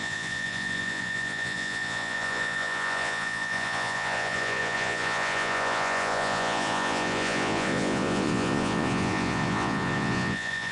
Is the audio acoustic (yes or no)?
no